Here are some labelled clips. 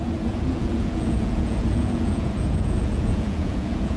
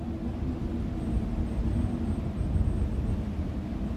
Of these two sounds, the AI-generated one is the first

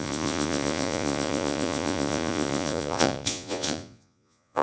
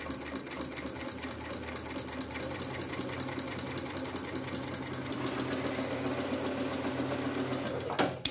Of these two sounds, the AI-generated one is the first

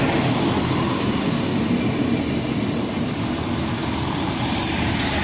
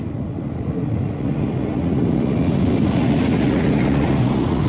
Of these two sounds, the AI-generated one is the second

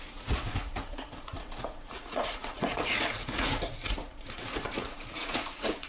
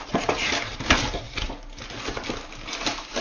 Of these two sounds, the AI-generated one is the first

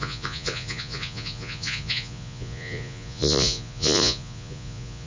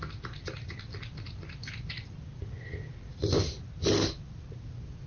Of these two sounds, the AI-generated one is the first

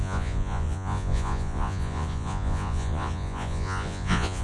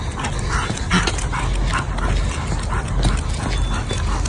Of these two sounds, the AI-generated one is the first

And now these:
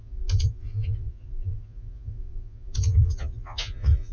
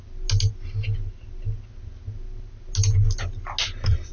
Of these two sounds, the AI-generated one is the first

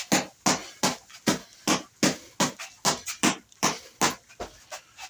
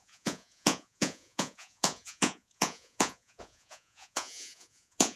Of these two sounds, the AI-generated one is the second